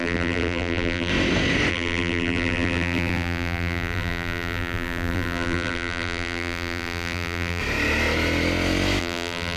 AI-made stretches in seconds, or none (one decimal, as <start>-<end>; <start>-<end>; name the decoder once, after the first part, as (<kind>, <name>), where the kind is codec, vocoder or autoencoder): 0.0-1.1 (vocoder, BigVGAN v2); 1.7-7.6; 9.0-9.6

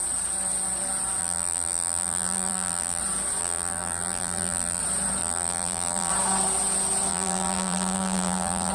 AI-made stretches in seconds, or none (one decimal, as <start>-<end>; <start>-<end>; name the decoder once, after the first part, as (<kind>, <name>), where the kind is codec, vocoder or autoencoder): 1.2-3.0 (vocoder, BigVGAN v2); 3.4-4.8; 5.2-6.1; 7.1-8.7

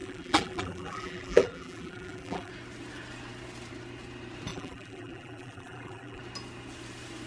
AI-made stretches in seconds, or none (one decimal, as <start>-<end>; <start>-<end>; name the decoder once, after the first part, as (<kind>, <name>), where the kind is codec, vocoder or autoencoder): 0.0-2.5 (vocoder, BigVGAN v2); 4.5-6.2

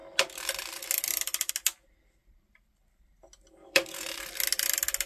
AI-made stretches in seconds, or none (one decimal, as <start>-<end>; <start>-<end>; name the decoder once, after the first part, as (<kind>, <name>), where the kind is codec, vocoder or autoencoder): 2.2-4.2 (vocoder, BigVGAN v2)